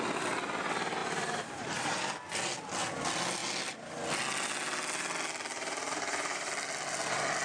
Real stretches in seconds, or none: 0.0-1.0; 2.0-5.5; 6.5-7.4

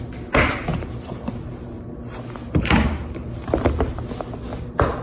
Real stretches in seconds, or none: 0.0-0.7; 3.7-5.0

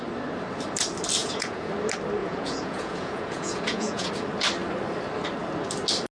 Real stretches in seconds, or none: 0.0-1.2; 1.7-2.2; 4.1-6.2

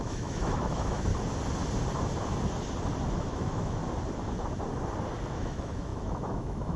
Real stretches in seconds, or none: 1.1-3.1; 3.8-5.3

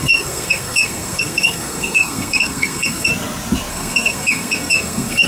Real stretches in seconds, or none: 3.1-3.7